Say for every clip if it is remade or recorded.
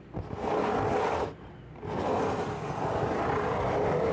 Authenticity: recorded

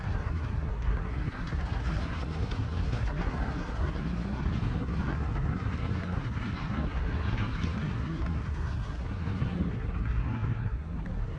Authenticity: remade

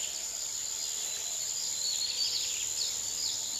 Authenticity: recorded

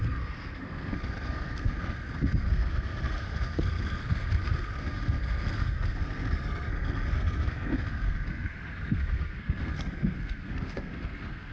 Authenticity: remade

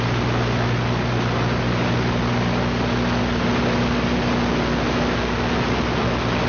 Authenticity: recorded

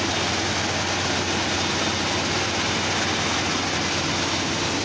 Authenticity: recorded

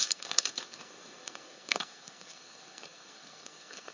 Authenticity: remade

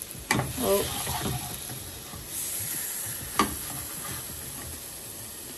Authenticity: recorded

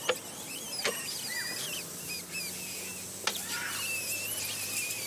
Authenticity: recorded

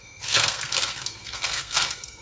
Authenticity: remade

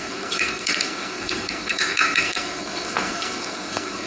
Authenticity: remade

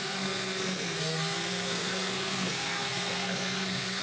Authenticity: remade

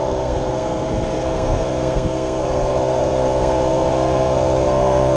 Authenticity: remade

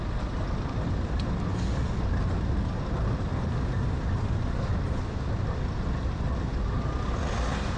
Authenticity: recorded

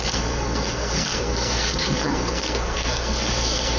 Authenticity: remade